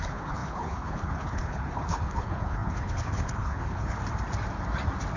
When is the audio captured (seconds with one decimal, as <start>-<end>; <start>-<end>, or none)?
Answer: 4.0-5.2

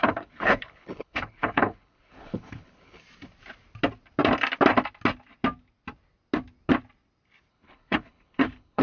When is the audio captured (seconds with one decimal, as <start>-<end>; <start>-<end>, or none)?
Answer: 3.0-7.5

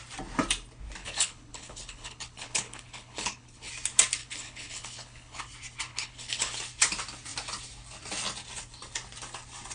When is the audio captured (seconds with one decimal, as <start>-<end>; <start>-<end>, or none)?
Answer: 0.0-1.0; 3.7-4.2; 5.4-5.9; 6.5-9.7